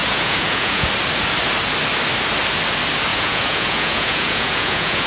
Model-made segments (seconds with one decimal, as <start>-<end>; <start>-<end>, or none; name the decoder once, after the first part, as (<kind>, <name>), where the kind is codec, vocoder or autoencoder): 0.0-0.9 (vocoder, Vocos); 3.1-5.1